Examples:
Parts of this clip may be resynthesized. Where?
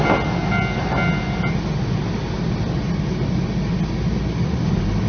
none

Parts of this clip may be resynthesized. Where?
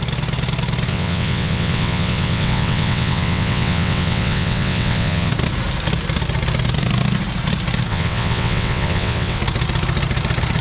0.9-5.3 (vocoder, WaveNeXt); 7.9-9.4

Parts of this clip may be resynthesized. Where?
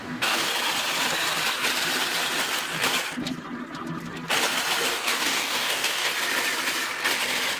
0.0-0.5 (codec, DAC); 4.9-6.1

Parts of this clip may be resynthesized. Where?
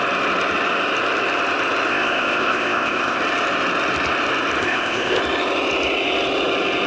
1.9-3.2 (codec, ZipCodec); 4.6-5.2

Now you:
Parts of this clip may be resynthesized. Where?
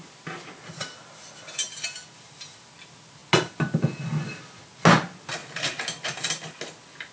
none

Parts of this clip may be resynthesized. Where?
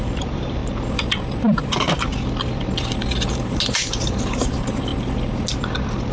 0.0-0.6 (vocoder, BigVGAN v2); 1.4-2.1; 3.3-4.9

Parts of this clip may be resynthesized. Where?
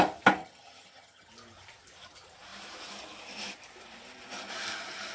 0.4-1.3 (vocoder, HiFi-GAN)